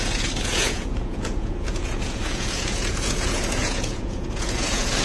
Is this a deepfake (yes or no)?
yes